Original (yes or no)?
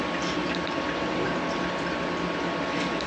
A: yes